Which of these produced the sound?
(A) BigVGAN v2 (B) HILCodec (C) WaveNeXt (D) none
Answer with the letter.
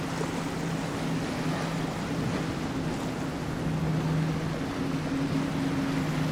D